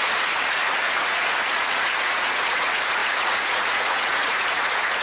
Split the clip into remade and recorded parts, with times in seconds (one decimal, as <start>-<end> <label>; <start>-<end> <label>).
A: 0.0-5.0 remade